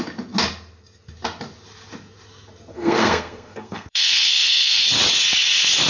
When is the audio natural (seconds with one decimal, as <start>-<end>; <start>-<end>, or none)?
0.0-2.7; 4.8-5.9